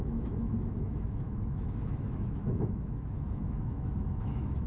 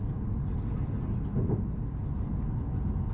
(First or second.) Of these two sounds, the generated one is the first